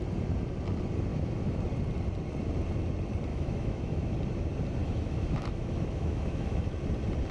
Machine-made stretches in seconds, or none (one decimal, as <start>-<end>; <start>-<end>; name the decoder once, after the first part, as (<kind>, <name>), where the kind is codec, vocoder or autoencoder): 1.1-1.6 (autoencoder, DAC-VAE); 3.3-4.1; 4.8-6.7